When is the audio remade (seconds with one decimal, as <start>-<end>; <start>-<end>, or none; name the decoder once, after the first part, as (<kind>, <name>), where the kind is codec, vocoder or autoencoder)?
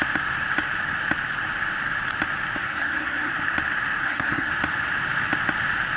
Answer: 2.6-3.3 (codec, SNAC); 4.0-4.5